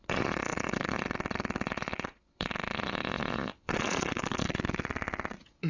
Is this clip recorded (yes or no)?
no